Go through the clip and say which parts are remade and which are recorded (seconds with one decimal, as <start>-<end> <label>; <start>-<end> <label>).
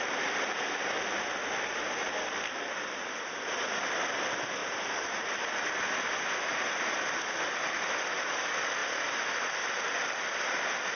0.0-10.9 recorded